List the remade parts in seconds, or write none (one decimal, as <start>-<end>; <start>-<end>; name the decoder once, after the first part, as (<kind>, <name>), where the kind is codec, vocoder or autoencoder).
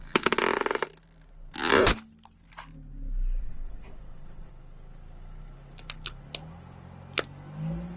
3.4-4.5 (vocoder, WaveNeXt)